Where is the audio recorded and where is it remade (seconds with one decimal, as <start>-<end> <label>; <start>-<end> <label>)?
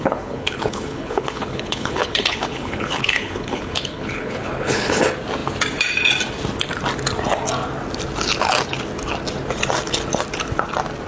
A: 0.0-5.0 remade; 5.0-11.1 recorded